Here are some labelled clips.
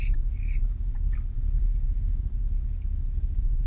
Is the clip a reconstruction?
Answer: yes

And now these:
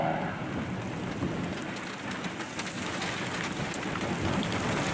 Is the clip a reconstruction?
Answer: no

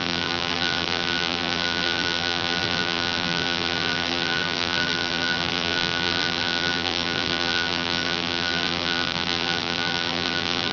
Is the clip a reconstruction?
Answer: yes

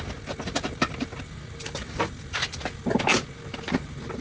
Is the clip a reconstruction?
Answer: no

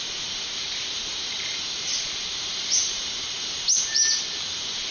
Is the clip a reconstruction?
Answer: yes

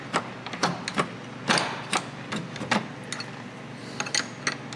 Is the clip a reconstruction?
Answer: no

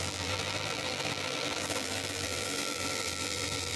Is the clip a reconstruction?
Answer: yes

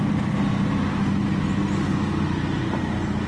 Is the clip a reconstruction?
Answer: no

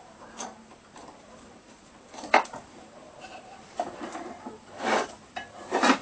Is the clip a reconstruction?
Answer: yes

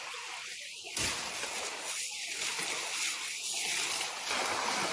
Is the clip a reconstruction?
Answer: no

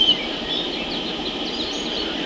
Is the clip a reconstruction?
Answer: no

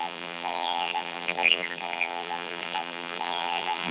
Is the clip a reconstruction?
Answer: yes